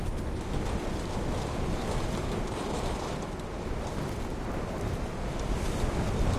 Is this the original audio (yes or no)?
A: yes